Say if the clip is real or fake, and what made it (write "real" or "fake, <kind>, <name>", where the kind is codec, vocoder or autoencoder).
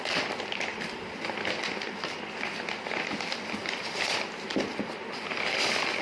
real